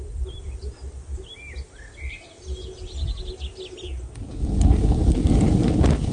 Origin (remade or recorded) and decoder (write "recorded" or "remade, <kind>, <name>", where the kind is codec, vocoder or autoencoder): recorded